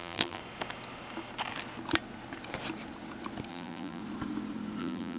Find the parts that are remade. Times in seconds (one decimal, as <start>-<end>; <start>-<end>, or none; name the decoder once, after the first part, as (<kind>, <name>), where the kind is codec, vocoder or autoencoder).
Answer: 0.0-0.4 (vocoder, BigVGAN v2); 3.5-4.0; 4.8-5.2